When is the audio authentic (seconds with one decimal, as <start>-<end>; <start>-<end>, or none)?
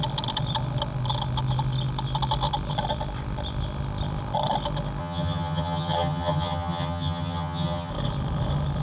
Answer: 0.0-5.0; 7.9-8.8